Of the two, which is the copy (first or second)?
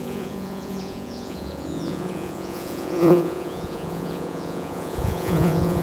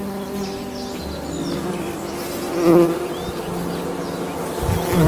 first